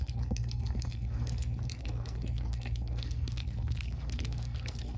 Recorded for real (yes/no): no